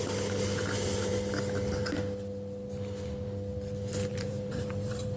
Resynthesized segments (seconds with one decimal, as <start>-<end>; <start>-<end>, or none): 4.1-5.2